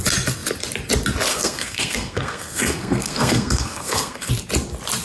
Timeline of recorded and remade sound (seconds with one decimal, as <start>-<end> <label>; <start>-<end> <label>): 0.0-1.3 recorded; 1.3-4.3 remade; 4.3-5.0 recorded